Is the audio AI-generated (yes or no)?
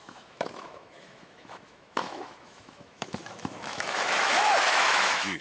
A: yes